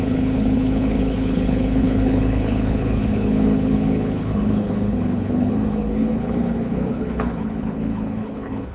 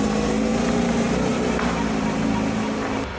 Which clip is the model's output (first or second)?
first